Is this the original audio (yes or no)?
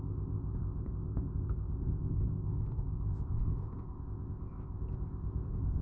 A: no